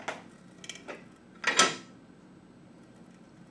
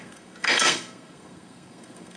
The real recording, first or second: first